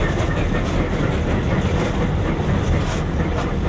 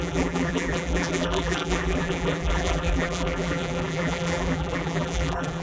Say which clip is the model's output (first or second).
second